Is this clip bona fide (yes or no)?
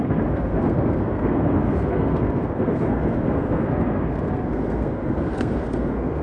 no